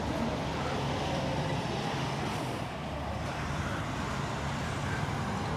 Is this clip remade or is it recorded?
recorded